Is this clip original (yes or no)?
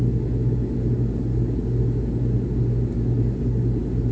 yes